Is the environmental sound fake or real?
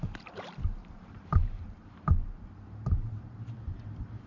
fake